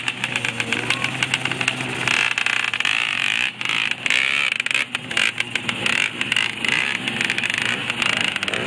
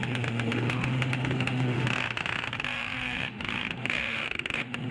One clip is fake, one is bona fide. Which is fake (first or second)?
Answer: second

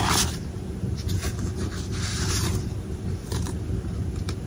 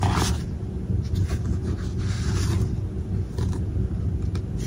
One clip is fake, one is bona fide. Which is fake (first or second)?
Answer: first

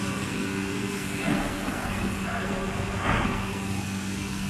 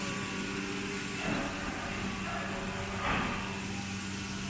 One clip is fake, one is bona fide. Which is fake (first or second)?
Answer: first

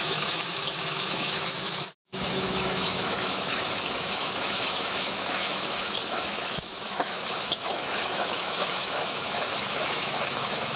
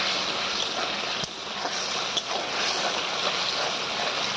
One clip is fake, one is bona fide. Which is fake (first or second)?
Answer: first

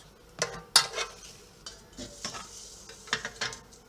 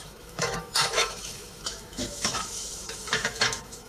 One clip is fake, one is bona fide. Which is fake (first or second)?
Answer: second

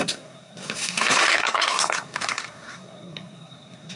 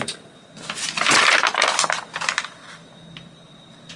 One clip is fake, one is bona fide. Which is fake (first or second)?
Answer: first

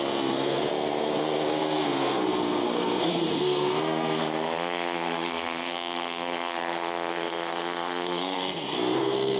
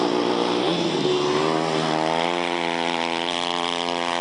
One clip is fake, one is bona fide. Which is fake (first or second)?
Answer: first